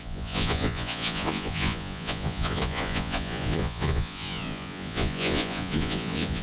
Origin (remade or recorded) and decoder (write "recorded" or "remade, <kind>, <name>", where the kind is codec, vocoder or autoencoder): remade, vocoder, Vocos